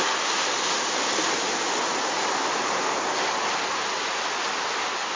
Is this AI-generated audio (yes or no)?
no